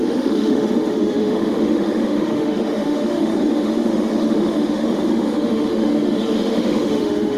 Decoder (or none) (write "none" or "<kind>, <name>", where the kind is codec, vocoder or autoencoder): autoencoder, DAC-VAE